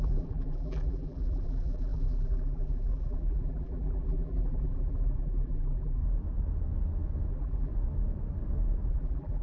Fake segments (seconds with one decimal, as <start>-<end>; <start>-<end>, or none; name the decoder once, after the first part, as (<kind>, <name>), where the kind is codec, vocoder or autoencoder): 0.0-6.0 (vocoder, BigVGAN v2); 7.3-7.7; 8.9-9.4